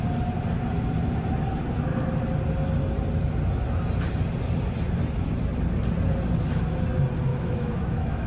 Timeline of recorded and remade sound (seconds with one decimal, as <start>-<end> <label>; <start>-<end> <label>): 0.0-7.3 recorded; 7.3-8.3 remade